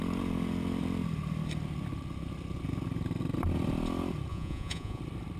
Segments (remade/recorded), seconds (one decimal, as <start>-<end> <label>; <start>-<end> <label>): 0.0-4.3 recorded; 4.3-5.0 remade; 5.0-5.4 recorded